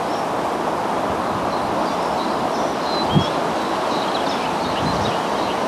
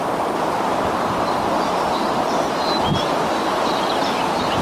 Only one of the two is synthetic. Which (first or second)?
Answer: second